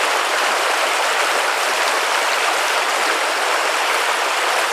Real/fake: real